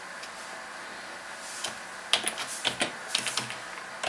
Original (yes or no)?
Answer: yes